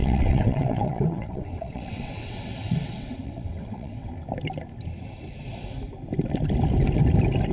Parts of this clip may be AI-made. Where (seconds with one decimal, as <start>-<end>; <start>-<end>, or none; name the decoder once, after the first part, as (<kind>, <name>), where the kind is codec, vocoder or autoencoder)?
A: 0.0-4.1 (vocoder, WaveNeXt)